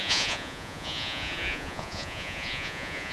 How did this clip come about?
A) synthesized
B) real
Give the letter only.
A